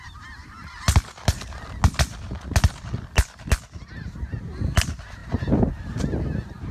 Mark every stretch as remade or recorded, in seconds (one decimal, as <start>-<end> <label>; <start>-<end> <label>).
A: 0.0-0.4 remade; 0.4-4.4 recorded; 4.4-5.2 remade; 5.2-6.7 recorded